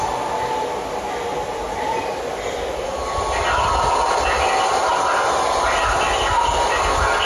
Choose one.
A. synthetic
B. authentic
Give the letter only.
B